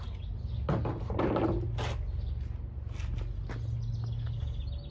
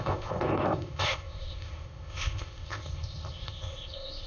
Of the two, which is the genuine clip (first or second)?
first